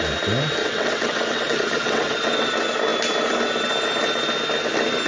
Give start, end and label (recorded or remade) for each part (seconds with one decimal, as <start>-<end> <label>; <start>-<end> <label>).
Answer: 0.0-0.6 recorded; 0.6-2.5 remade; 2.5-5.1 recorded